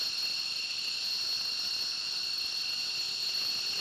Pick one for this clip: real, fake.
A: real